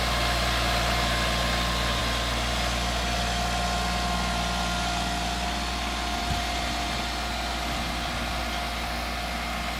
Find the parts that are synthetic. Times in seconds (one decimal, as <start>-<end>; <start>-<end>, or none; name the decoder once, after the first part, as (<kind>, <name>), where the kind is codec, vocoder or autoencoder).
none